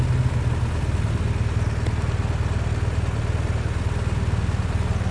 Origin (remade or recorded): recorded